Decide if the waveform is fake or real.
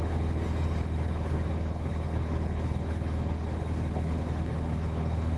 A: fake